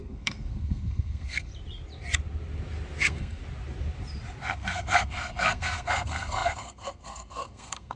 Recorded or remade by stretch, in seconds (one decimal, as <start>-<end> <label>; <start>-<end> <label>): 0.0-1.5 remade; 1.5-3.0 recorded; 3.0-3.4 remade; 3.4-4.4 recorded; 4.4-8.0 remade

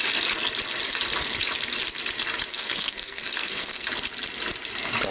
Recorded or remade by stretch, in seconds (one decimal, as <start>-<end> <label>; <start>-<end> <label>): 0.0-2.5 recorded; 2.5-3.9 remade; 3.9-5.1 recorded

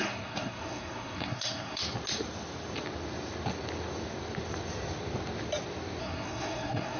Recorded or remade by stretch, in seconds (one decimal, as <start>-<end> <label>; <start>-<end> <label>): 0.0-1.8 remade; 1.8-6.0 recorded; 6.0-7.0 remade

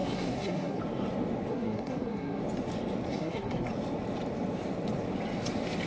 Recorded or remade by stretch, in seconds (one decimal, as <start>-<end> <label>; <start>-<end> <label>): 0.0-0.8 remade; 0.8-1.5 recorded; 1.5-2.4 remade; 2.4-3.1 recorded; 3.1-3.7 remade; 3.7-5.9 recorded